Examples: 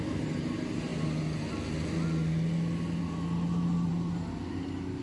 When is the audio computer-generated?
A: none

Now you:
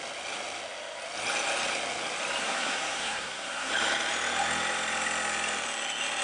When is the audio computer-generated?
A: 2.4-3.7 (codec, SNAC)

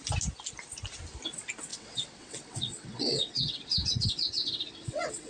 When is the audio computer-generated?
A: 1.7-5.3 (vocoder, WaveNeXt)

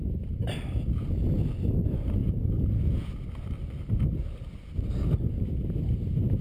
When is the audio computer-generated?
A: 2.2-3.1 (vocoder, Vocos)

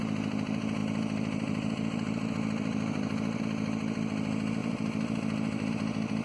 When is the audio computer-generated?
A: 0.8-3.4 (vocoder, BigVGAN v2); 4.6-5.7

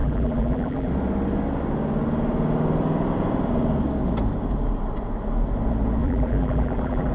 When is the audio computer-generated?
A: 0.0-0.9 (vocoder, BigVGAN v2); 6.0-7.1